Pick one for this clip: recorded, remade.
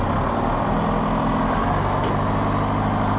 recorded